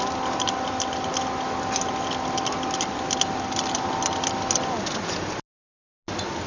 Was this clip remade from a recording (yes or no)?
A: no